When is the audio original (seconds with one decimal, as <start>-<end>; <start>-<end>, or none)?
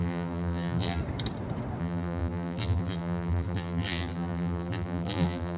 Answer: 1.0-1.8